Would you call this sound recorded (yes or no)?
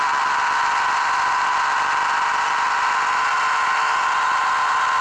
yes